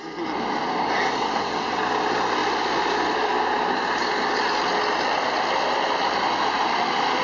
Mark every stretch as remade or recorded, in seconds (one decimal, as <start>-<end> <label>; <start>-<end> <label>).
0.0-1.2 recorded; 1.2-1.8 remade; 1.8-7.2 recorded